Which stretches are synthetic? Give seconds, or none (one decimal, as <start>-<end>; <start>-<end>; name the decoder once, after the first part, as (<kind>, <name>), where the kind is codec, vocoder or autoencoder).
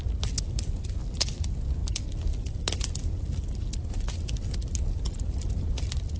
none